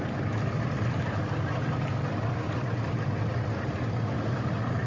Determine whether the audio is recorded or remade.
recorded